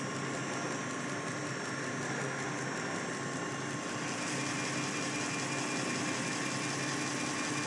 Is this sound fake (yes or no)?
no